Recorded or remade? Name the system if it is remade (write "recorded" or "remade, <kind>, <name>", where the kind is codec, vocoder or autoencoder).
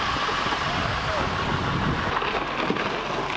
recorded